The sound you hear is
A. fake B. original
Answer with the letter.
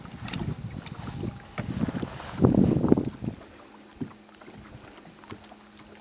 B